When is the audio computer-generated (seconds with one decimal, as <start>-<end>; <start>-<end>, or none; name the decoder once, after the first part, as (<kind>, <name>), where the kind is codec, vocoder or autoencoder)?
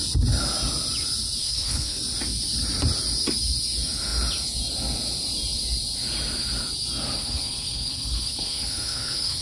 1.4-2.0 (codec, HILCodec); 7.2-9.4